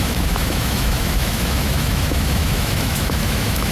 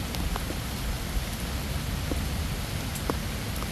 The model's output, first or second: first